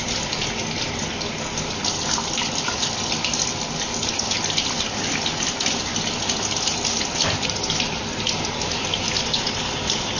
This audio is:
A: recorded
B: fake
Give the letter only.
A